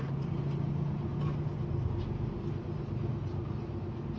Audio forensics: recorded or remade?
recorded